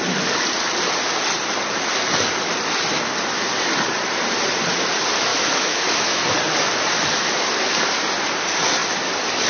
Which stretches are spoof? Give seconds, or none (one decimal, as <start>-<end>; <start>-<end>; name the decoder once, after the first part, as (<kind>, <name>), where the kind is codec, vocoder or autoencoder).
5.3-6.2 (autoencoder, DAC-VAE)